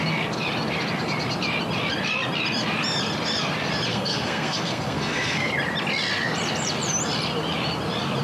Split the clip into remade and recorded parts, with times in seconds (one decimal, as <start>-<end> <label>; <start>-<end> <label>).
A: 0.0-3.9 recorded; 3.9-5.5 remade; 5.5-8.2 recorded